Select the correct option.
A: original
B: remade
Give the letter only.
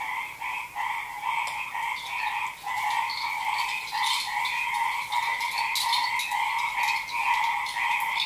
A